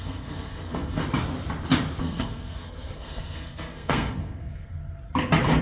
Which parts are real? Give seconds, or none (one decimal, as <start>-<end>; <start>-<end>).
1.0-2.0; 4.8-5.6

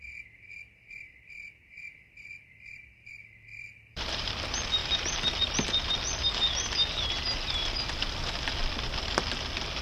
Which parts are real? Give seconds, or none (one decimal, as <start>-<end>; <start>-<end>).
0.0-2.3; 3.1-3.5; 4.3-9.8

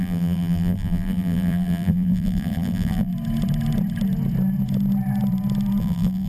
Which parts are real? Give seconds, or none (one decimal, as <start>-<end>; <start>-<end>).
3.1-5.8

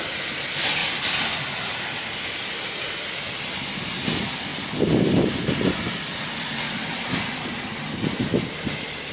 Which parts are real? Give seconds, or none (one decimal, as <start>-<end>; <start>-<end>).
0.0-9.1

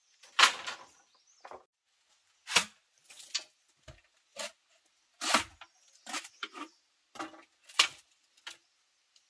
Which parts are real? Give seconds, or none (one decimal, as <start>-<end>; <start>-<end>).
0.0-9.3

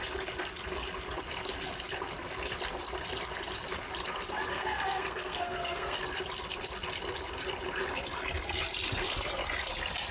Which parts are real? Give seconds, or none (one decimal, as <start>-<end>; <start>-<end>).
0.0-4.5; 6.0-10.1

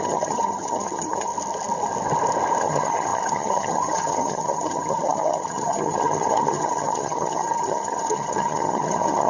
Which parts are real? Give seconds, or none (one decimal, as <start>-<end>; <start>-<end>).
1.3-2.6

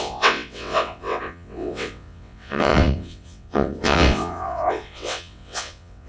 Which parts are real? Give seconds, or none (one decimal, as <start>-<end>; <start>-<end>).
none